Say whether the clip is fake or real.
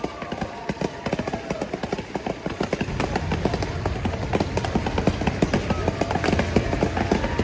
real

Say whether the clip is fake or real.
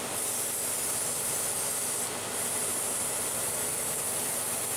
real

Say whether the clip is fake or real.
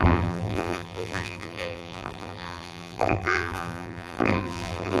fake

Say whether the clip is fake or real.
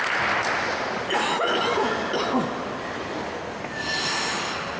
real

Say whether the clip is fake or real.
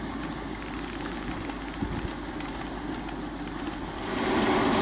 real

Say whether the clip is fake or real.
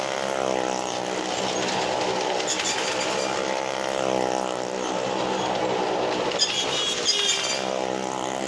real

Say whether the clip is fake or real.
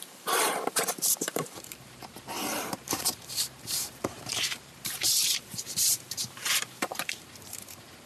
fake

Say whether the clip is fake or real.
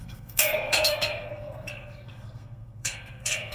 fake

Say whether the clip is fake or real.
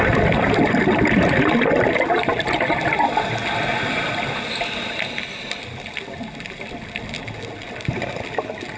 real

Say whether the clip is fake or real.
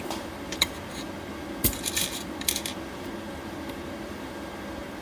fake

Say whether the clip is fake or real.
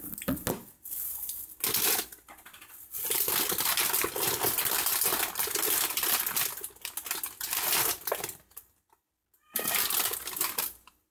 real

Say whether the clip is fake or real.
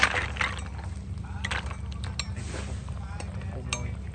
real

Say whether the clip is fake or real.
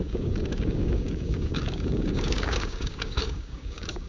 fake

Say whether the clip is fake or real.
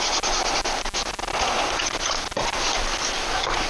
real